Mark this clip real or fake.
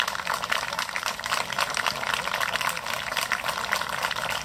real